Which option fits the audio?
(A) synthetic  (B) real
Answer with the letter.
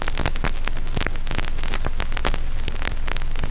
B